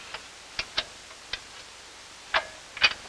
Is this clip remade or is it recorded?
recorded